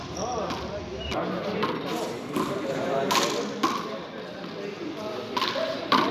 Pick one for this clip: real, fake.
real